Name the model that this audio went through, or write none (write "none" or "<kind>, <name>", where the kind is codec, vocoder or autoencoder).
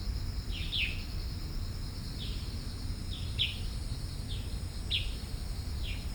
none